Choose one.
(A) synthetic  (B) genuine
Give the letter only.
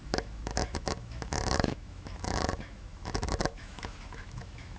A